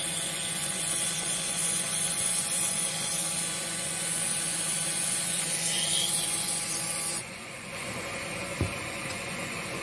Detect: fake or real fake